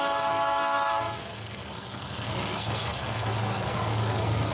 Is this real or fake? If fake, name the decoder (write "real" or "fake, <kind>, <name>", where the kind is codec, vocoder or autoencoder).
fake, codec, SNAC